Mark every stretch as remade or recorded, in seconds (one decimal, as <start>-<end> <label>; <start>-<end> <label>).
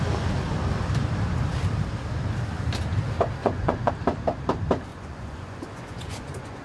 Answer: 0.0-3.4 recorded; 3.4-3.9 remade; 3.9-4.9 recorded; 4.9-6.6 remade